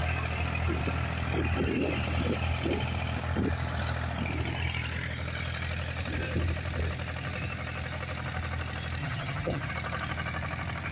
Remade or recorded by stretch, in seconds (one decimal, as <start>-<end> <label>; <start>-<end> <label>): 0.0-9.0 recorded; 9.0-9.7 remade; 9.7-10.9 recorded